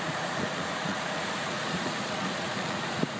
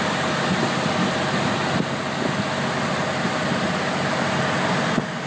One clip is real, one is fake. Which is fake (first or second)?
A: first